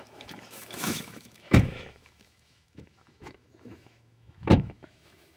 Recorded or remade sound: remade